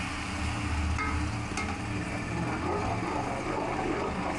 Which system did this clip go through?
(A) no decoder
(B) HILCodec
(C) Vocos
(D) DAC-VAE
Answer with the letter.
A